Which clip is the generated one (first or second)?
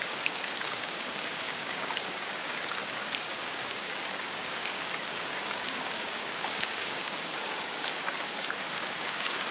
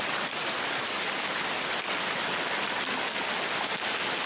first